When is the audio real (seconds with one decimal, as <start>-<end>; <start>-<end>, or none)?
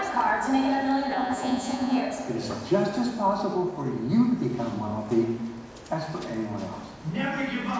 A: 0.0-1.1; 2.0-7.8